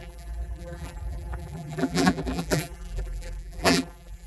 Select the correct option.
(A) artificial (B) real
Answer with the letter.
A